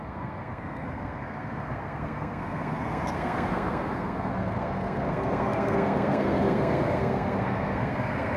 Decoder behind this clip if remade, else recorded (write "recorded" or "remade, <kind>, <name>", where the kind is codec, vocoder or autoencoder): remade, codec, SNAC